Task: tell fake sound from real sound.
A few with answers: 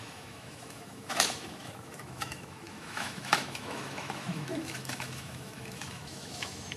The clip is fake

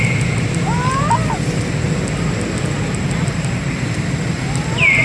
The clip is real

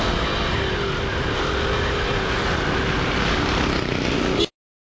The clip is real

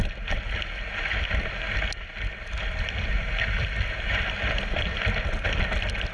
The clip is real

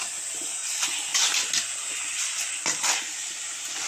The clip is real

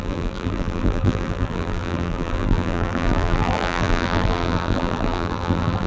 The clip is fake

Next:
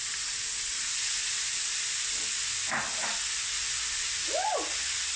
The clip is real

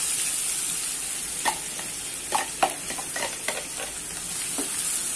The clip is real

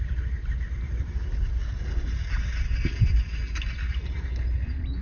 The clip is real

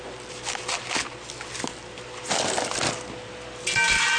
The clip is real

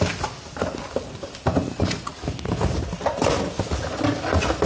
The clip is real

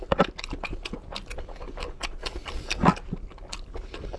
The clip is real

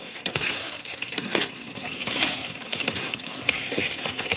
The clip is fake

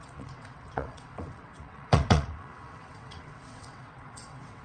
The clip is fake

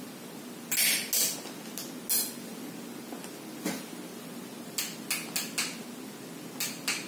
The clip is real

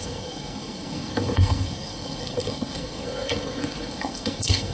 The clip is fake